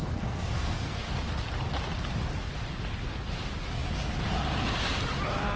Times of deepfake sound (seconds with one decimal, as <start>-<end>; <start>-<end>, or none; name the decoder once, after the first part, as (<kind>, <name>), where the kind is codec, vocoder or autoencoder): 0.0-1.1 (codec, SNAC)